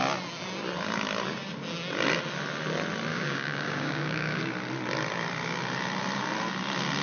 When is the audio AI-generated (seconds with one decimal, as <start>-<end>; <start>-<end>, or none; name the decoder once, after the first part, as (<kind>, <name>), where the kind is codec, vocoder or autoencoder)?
3.1-4.4 (codec, DAC)